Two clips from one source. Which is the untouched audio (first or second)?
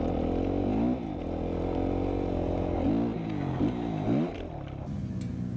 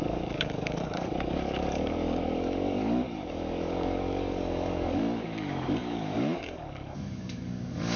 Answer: first